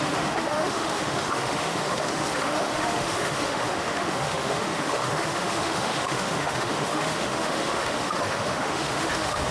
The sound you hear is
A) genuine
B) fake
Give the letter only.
B